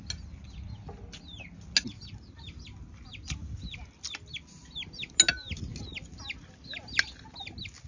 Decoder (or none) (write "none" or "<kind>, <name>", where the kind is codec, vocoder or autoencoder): none